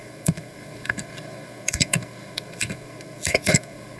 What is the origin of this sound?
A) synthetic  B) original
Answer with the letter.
A